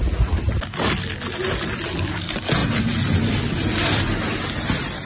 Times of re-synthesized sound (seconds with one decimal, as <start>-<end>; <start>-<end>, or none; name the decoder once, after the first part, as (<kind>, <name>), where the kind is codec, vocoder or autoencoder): none